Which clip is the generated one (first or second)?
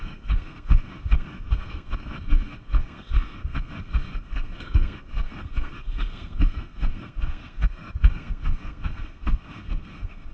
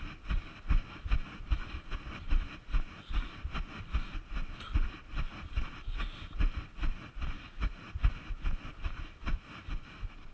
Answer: first